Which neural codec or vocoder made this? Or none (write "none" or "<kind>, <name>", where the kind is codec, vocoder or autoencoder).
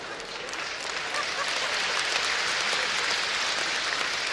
none